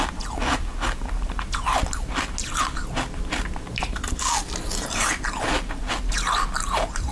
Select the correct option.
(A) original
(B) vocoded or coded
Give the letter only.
A